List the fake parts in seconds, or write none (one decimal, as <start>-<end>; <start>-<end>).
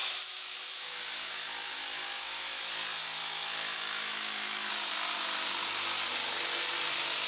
0.0-2.6; 3.2-4.7